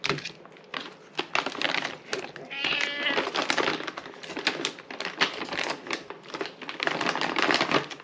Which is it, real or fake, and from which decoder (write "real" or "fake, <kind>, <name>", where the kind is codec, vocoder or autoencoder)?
real